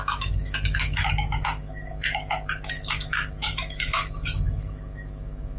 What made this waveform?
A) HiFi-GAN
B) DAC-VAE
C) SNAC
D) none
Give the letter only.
B